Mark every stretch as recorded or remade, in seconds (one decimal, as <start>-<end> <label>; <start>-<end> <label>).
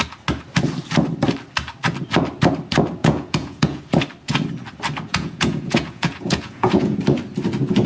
0.0-3.0 recorded; 3.0-3.8 remade; 3.8-5.1 recorded; 5.1-7.0 remade; 7.0-7.9 recorded